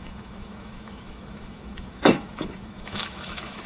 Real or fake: fake